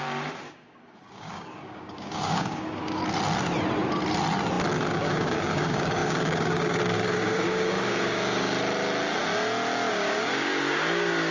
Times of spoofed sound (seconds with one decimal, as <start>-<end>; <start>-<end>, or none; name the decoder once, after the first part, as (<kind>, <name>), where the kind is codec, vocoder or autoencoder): 0.0-3.0 (codec, DAC); 4.9-8.5; 9.9-11.3